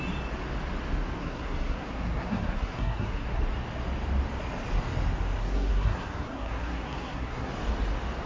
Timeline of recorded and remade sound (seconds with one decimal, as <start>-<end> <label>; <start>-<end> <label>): 0.0-1.2 recorded; 1.2-3.4 remade; 3.4-5.4 recorded; 5.4-7.5 remade; 7.5-8.3 recorded